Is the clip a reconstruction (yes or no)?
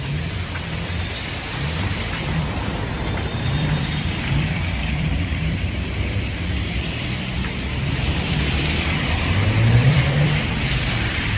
yes